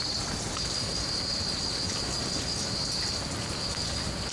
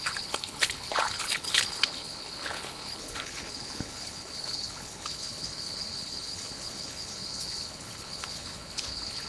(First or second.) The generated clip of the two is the second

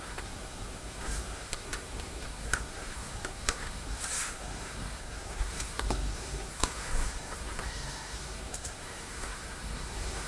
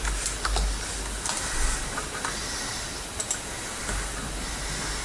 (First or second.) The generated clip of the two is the first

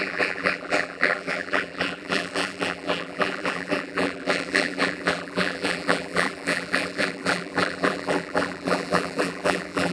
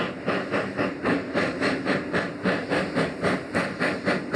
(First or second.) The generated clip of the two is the first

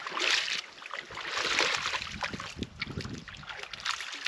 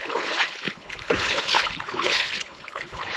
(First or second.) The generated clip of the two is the second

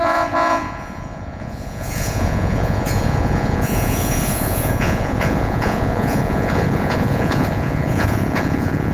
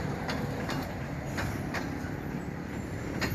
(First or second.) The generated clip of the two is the first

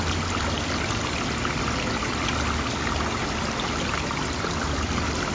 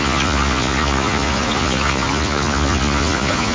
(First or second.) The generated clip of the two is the second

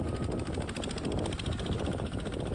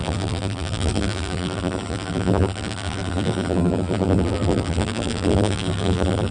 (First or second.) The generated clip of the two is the second